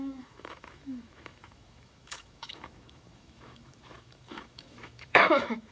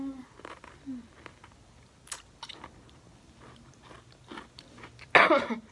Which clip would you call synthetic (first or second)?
first